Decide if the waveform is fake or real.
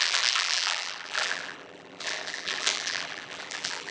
fake